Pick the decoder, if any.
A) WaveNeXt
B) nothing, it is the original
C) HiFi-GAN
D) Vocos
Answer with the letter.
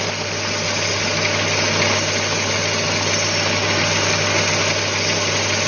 B